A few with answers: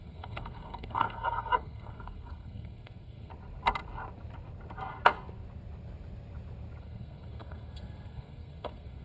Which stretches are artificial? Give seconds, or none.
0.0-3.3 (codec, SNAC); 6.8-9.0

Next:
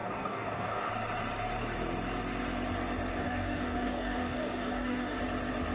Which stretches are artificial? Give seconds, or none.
0.0-0.9 (codec, DAC); 3.1-5.2

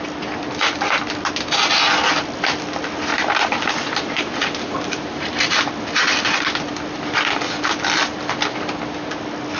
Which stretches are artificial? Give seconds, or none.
3.1-5.7 (vocoder, BigVGAN v2)

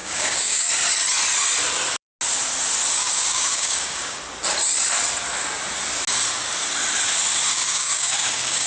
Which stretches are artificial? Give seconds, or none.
0.0-0.7 (codec, DAC); 3.0-4.2; 7.5-8.7